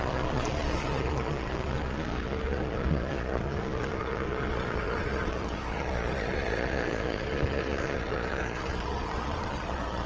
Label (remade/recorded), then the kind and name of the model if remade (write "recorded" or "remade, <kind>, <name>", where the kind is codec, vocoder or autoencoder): remade, vocoder, Vocos